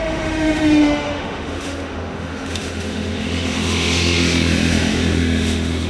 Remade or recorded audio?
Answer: remade